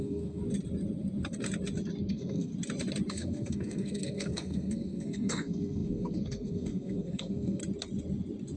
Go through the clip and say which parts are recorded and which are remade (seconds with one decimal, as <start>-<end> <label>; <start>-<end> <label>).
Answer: 0.0-0.4 remade; 0.4-2.1 recorded; 2.1-2.5 remade; 2.5-3.1 recorded; 3.1-7.6 remade; 7.6-8.6 recorded